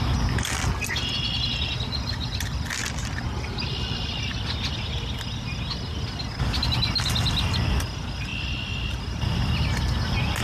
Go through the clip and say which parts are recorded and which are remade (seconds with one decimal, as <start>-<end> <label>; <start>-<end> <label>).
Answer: 0.0-10.4 recorded